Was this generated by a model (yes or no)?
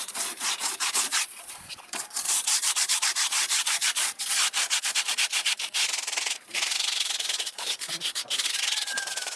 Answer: yes